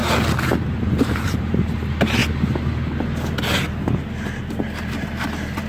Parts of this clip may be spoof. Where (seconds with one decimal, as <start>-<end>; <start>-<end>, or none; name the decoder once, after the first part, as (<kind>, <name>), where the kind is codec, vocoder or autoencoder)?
0.8-2.2 (vocoder, BigVGAN v2); 4.4-5.7